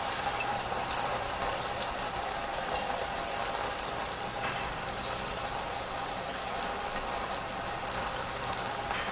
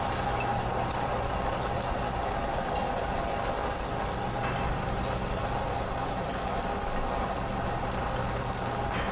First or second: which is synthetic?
first